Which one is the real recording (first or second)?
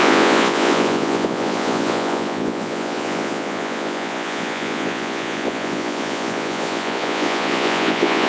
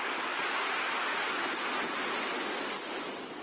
second